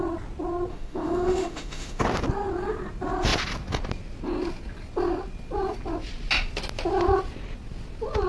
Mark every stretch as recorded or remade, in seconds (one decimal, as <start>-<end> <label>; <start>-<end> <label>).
0.0-0.7 recorded; 0.7-2.0 remade; 2.0-8.3 recorded